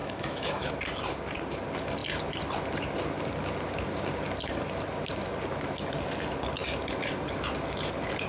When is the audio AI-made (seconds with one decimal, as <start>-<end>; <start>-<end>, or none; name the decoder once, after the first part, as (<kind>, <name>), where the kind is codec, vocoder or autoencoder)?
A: 0.0-0.7 (autoencoder, DAC-VAE)